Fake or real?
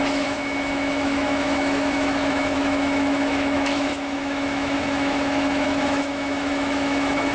fake